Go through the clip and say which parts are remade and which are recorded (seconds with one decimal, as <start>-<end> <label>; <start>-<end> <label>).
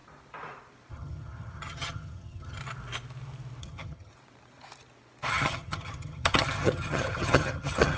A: 0.0-0.9 recorded; 0.9-2.6 remade; 2.6-3.6 recorded; 3.6-4.1 remade; 4.1-5.3 recorded; 5.3-8.0 remade